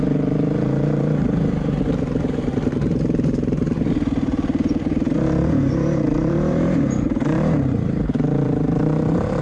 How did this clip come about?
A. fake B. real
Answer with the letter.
A